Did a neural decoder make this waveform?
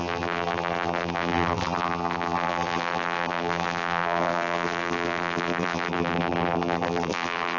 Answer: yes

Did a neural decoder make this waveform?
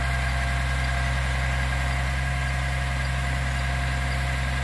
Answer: no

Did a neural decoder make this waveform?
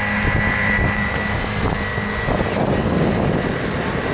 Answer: no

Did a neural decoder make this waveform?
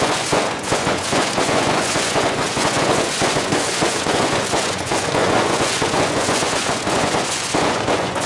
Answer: yes